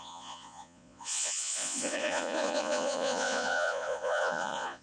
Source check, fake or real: fake